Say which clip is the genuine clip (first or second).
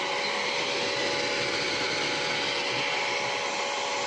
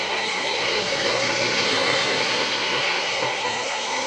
first